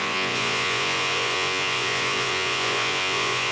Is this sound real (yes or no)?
no